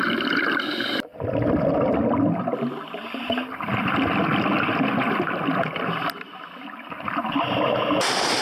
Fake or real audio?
real